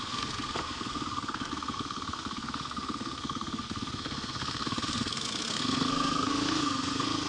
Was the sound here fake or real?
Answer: fake